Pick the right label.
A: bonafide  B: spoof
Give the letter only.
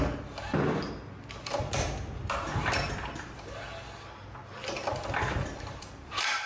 A